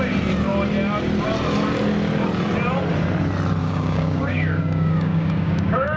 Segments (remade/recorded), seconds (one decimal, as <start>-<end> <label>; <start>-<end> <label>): 0.0-3.6 recorded; 3.6-6.0 remade